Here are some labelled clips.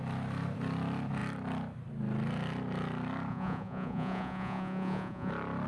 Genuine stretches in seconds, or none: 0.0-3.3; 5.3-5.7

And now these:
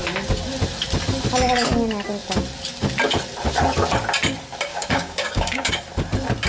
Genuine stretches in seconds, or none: 0.0-4.7; 5.7-6.5

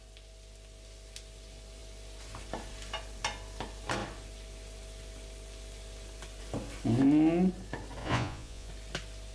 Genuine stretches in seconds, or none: 0.0-8.0; 8.7-9.3